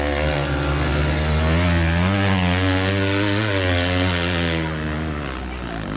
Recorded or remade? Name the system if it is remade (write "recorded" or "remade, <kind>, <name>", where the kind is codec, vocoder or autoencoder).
recorded